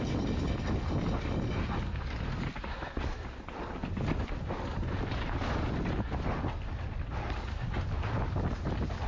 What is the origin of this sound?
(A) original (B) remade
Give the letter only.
A